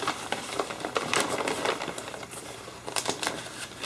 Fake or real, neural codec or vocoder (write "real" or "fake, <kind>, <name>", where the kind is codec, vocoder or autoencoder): fake, vocoder, BigVGAN v2